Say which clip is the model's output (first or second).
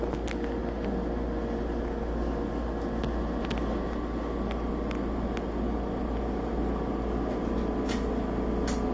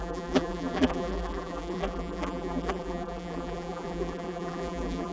second